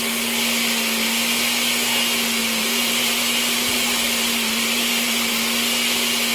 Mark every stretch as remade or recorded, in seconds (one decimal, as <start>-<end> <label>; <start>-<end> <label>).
0.0-2.4 recorded; 2.4-5.3 remade; 5.3-6.3 recorded